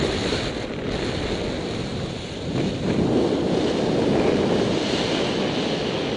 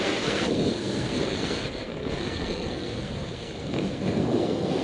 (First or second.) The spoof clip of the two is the second